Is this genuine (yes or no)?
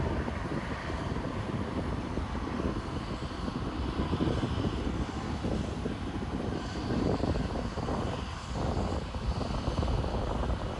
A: no